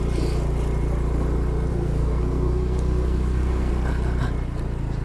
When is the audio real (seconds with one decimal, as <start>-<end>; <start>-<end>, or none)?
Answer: 0.0-1.7; 3.7-5.0